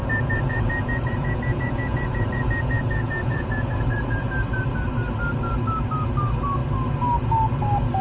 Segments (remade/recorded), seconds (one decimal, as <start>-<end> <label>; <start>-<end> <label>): 0.0-4.3 remade; 4.3-8.0 recorded